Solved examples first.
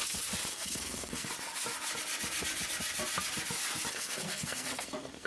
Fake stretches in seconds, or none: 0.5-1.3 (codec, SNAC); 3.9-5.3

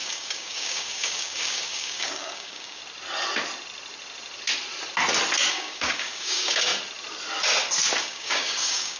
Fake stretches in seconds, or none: 0.0-2.8 (codec, DAC); 5.5-6.7; 8.0-9.0

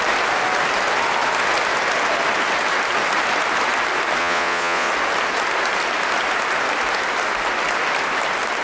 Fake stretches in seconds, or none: 4.2-4.9 (vocoder, Vocos)

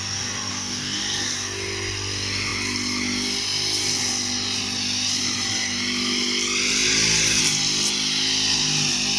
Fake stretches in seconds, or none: 0.5-1.0 (codec, DAC)